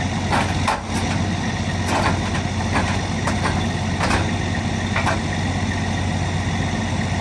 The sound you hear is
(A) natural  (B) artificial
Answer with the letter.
A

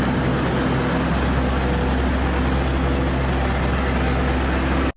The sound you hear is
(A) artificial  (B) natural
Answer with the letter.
B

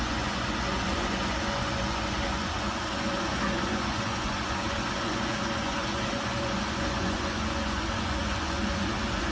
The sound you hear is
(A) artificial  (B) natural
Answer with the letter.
A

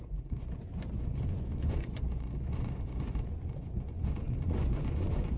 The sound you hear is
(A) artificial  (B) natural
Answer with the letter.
A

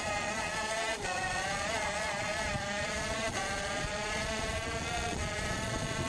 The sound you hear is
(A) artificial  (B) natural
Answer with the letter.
A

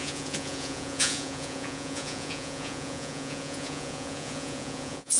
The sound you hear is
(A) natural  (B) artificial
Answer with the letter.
B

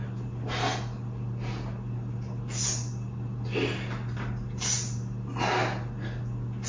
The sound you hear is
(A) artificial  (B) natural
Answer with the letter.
B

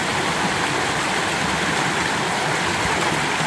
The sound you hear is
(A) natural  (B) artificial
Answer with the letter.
A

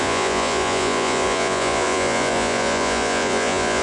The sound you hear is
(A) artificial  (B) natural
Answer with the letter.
A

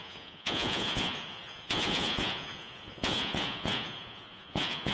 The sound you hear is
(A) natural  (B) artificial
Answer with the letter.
B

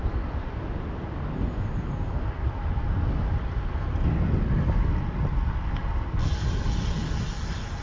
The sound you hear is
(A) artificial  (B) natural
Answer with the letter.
B